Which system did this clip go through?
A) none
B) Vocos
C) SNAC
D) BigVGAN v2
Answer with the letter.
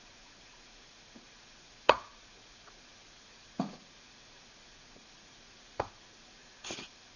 B